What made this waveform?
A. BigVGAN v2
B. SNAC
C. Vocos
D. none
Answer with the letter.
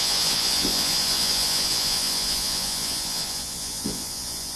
C